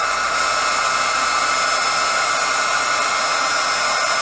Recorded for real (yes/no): yes